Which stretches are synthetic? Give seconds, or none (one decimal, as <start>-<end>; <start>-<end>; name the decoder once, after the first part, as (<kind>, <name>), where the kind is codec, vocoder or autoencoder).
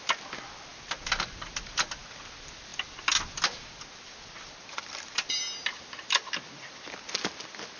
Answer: none